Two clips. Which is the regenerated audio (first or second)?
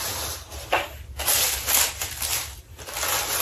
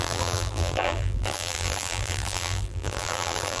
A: second